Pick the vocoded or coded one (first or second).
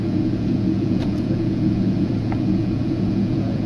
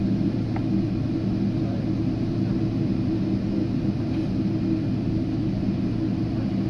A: first